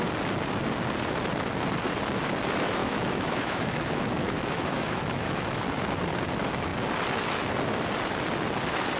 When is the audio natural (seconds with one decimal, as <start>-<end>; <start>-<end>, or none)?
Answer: 0.0-2.8; 5.6-9.0